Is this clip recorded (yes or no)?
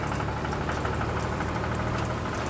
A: yes